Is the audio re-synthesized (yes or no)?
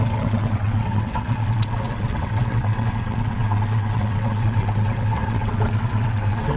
yes